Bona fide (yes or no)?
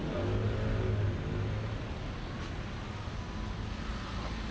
yes